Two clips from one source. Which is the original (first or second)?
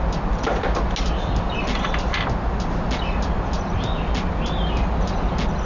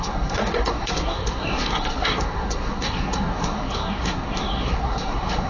first